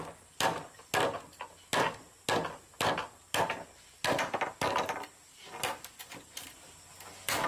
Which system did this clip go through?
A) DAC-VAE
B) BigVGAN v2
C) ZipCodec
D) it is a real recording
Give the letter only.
D